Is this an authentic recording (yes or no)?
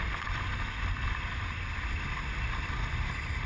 yes